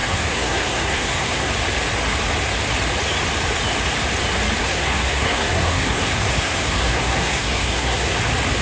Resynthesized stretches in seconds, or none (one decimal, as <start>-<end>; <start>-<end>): 0.0-1.5; 4.6-8.2